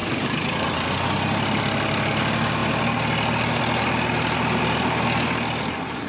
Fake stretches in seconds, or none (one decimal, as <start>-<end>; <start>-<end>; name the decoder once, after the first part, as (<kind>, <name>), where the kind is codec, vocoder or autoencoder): 0.0-0.9 (vocoder, BigVGAN v2)